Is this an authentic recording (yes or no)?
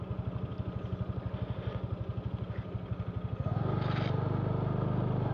yes